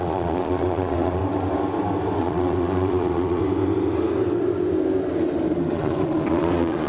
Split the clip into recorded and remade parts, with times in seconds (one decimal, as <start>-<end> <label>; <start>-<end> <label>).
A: 0.0-1.2 remade; 1.2-2.2 recorded; 2.2-3.4 remade; 3.4-5.7 recorded; 5.7-6.9 remade